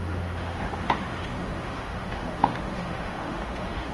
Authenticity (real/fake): fake